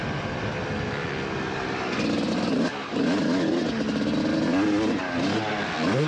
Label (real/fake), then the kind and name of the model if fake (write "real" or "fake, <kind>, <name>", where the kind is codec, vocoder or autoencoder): real